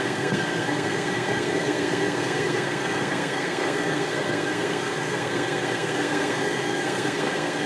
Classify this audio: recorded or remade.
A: remade